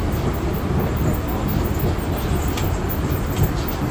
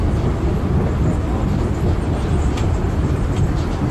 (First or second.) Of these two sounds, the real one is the first